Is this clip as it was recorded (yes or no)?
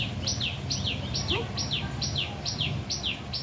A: yes